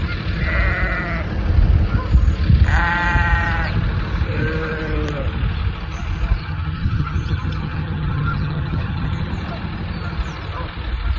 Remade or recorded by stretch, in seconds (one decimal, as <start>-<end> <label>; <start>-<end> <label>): 0.0-6.4 recorded; 6.4-9.3 remade; 9.3-11.2 recorded